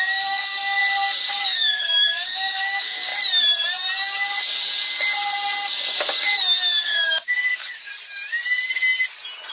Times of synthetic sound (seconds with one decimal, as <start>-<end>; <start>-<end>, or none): 0.0-0.8; 1.3-3.1; 6.8-7.9

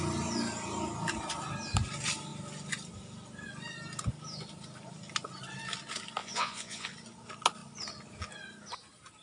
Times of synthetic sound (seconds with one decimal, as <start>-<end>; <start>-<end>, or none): 6.2-6.9

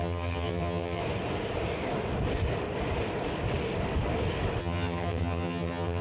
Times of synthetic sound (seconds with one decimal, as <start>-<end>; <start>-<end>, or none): 0.0-1.0; 4.6-6.0

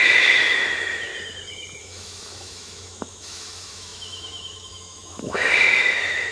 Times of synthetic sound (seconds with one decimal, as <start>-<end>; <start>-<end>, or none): 0.0-1.1; 1.8-6.3

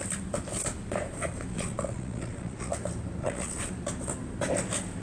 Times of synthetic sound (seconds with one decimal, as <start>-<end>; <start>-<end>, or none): 1.5-2.7; 3.2-3.7